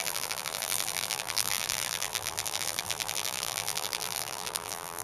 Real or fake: fake